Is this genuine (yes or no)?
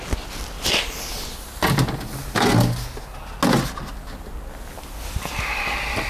yes